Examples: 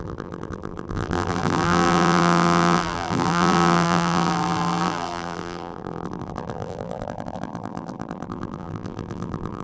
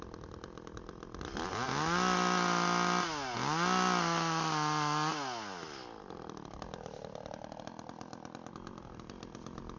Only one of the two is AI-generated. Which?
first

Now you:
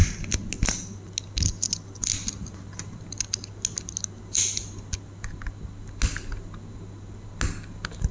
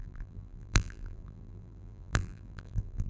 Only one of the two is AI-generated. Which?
second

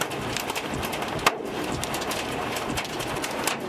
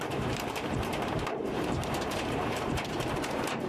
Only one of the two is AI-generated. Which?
second